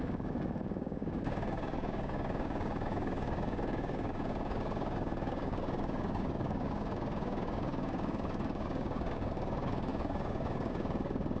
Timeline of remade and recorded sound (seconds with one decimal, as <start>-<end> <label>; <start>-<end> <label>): 0.0-11.4 remade